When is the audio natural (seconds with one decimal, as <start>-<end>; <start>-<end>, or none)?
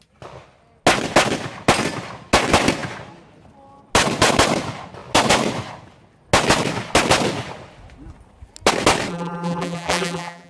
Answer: 0.0-9.1